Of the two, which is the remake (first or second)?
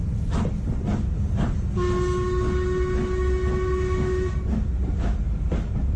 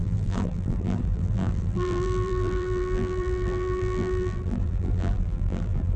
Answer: second